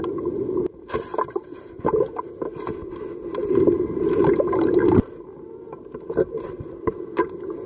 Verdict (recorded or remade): recorded